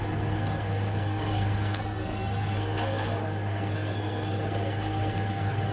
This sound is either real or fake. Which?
fake